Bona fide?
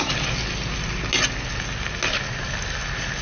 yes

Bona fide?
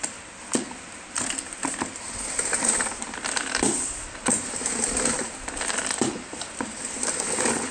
yes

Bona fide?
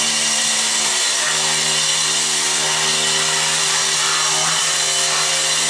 yes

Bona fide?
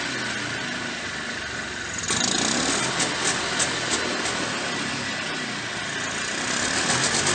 yes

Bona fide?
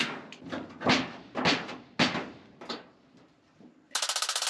yes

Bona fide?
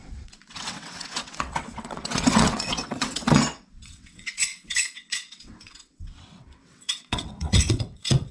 no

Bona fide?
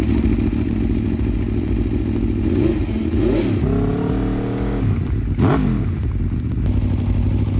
yes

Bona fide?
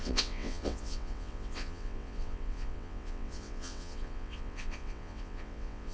no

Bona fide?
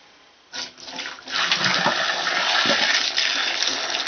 yes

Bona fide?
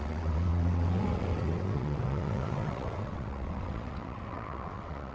no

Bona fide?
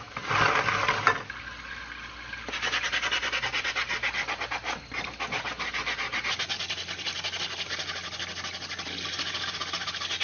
yes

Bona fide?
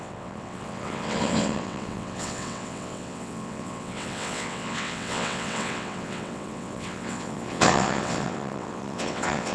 no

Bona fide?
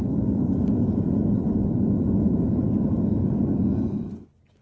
yes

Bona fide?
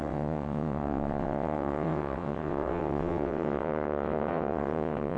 no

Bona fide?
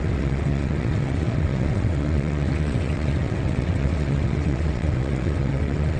no